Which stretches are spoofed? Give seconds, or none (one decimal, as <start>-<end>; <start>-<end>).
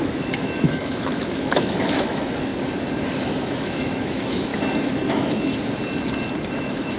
0.0-2.5; 3.4-4.5; 5.1-5.5; 6.5-7.0